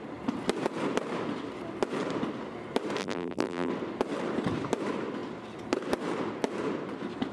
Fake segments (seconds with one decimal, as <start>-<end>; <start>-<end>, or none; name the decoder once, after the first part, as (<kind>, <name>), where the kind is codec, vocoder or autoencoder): 3.0-3.7 (vocoder, BigVGAN v2)